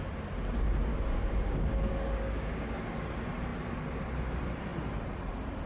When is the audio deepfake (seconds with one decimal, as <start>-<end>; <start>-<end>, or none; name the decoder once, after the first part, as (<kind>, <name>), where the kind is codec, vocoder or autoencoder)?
0.9-2.8 (codec, DAC)